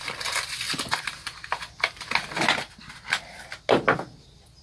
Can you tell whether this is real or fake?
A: real